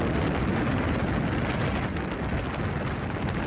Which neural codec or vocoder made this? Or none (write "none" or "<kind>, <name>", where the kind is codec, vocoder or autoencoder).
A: none